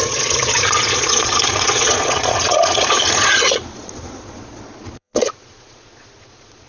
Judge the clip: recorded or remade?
remade